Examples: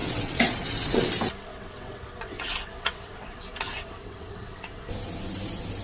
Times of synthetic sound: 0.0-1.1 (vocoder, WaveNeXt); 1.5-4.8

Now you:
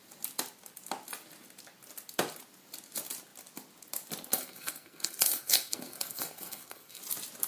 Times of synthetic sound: 4.3-7.0 (codec, SNAC)

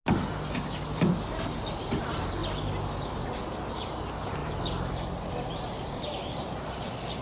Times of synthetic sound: none

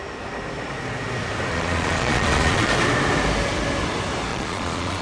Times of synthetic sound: 1.5-2.7 (vocoder, Vocos); 4.3-5.0